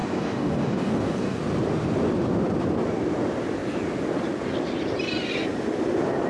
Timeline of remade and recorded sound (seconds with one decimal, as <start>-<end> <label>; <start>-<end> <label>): 0.0-1.4 remade; 1.4-6.3 recorded